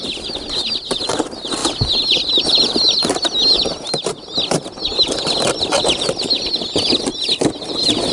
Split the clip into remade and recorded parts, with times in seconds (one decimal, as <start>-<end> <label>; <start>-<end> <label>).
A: 0.0-1.6 remade; 1.6-2.2 recorded; 2.2-3.0 remade; 3.0-6.3 recorded; 6.3-8.1 remade